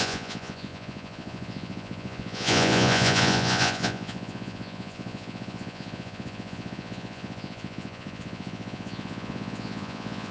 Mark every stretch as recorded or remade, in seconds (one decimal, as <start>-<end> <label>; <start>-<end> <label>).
0.0-10.3 remade